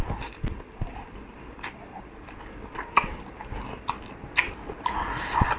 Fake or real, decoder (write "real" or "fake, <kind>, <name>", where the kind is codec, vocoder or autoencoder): real